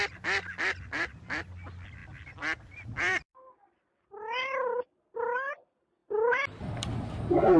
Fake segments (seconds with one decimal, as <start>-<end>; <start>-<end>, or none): 2.0-5.5; 6.0-6.9